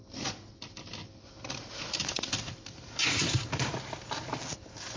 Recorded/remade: recorded